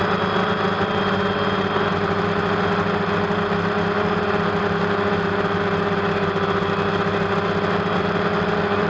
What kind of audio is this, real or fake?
real